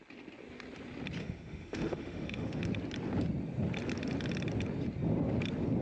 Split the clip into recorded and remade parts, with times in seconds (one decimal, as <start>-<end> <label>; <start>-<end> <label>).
0.0-1.2 recorded; 1.2-2.6 remade; 2.6-5.8 recorded